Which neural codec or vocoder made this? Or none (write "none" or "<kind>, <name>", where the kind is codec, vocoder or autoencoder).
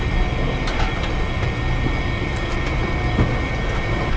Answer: none